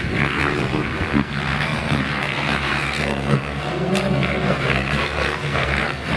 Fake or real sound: fake